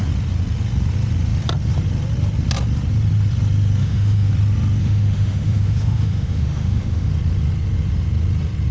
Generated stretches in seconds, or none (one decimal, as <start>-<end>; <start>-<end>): 3.8-4.3; 4.8-7.1